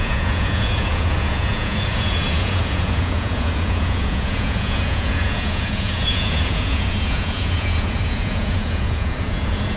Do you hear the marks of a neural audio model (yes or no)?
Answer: yes